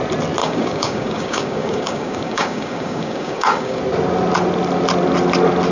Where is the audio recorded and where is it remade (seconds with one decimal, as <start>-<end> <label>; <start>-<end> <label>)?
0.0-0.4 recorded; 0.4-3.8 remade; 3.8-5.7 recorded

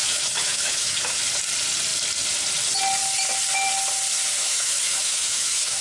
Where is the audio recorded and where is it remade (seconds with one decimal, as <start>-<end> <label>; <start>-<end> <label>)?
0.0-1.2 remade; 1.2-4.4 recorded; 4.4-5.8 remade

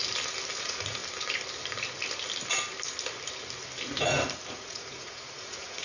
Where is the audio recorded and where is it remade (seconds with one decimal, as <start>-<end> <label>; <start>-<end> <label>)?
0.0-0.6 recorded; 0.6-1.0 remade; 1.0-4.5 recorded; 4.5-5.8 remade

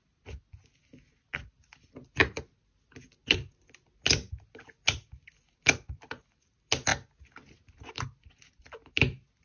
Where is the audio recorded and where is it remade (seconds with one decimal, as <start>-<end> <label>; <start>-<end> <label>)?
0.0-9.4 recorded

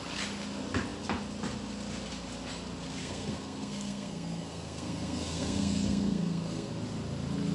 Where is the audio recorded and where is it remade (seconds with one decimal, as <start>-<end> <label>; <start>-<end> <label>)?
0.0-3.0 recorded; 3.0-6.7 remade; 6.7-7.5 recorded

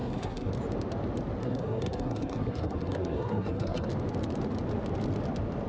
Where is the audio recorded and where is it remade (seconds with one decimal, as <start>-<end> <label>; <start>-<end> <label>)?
0.0-0.5 remade; 0.5-1.4 recorded; 1.4-3.9 remade; 3.9-5.7 recorded

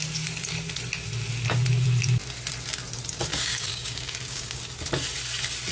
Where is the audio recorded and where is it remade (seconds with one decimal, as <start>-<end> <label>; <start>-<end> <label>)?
0.0-3.3 recorded; 3.3-4.6 remade; 4.6-5.7 recorded

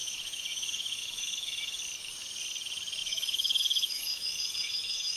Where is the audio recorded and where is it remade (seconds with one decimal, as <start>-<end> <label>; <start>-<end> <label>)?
0.0-1.8 remade; 1.8-3.0 recorded; 3.0-5.2 remade